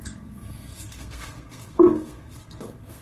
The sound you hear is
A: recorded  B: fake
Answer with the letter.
B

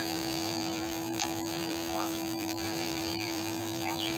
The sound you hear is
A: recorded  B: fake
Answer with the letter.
B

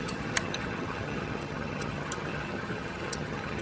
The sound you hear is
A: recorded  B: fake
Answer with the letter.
B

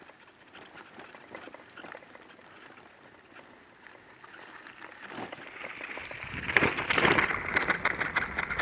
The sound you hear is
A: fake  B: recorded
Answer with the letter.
B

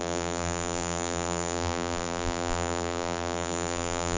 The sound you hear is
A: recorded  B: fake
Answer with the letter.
B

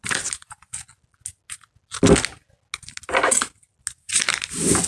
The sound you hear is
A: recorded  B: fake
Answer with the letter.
A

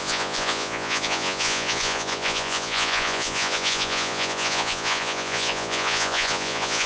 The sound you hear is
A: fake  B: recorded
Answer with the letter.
A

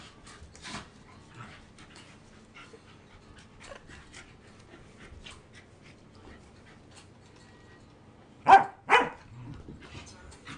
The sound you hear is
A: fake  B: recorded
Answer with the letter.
B